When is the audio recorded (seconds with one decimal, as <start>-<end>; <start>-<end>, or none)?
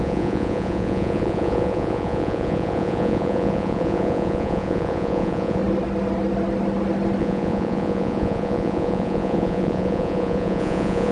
5.6-7.2